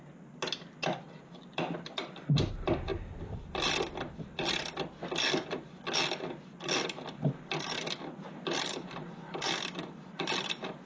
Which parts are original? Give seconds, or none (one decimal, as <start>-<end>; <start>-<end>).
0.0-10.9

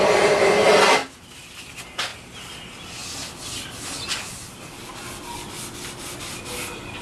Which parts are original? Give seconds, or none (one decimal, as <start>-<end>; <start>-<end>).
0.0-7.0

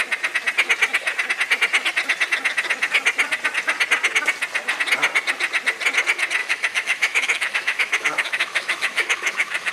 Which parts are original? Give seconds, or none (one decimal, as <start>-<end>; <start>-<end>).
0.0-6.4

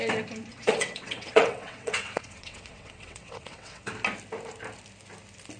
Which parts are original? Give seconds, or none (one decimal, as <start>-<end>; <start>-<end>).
0.0-0.5; 3.9-5.6

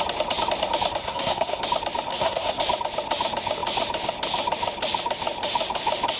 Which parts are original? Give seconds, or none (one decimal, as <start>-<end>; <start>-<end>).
0.0-1.0; 1.6-2.1; 2.6-6.2